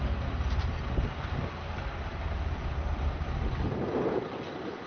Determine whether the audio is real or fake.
real